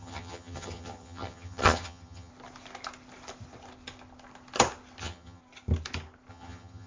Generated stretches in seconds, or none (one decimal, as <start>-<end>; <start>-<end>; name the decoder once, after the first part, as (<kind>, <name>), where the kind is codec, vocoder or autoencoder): 0.0-2.3 (vocoder, HiFi-GAN); 5.0-5.4; 6.3-6.9